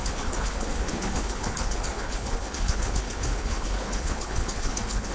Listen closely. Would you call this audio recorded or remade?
remade